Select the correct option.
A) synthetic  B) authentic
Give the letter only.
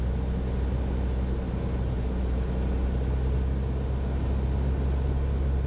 B